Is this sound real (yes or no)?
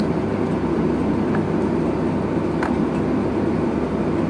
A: yes